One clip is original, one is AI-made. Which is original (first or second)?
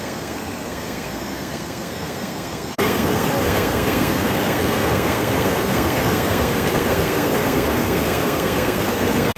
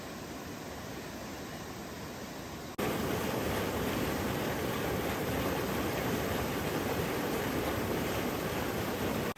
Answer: second